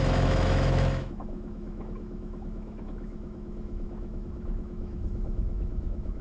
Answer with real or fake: fake